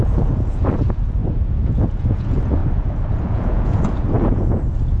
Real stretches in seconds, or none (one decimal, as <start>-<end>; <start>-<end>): 2.6-3.1